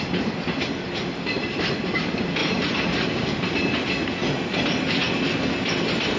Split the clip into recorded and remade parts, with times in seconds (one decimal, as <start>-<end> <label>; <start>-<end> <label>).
0.0-2.4 recorded; 2.4-3.5 remade; 3.5-6.2 recorded

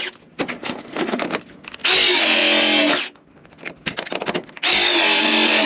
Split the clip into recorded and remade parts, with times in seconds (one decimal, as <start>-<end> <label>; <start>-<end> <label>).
0.0-0.6 recorded; 0.6-1.2 remade; 1.2-5.7 recorded